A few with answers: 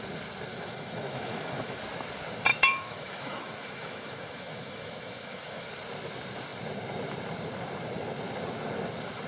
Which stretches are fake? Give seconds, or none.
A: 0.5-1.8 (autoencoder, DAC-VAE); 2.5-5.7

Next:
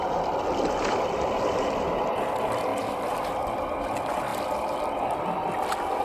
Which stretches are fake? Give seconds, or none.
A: none

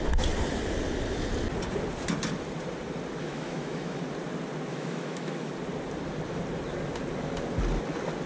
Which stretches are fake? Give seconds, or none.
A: 3.2-4.0 (autoencoder, DAC-VAE); 4.7-5.5

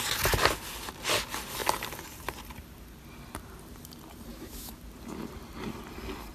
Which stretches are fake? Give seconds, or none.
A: 4.3-4.8 (autoencoder, DAC-VAE)

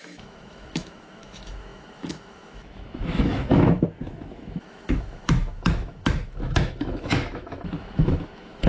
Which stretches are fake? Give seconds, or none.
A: 0.0-8.7 (autoencoder, DAC-VAE)

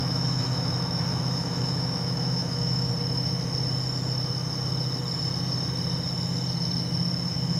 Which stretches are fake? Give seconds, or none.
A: 0.0-2.9 (autoencoder, DAC-VAE)

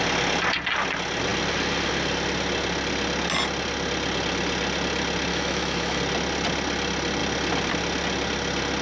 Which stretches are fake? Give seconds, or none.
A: 5.3-6.0 (autoencoder, DAC-VAE)